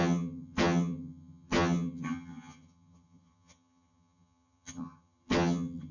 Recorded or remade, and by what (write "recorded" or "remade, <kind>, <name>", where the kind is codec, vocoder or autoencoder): remade, vocoder, HiFi-GAN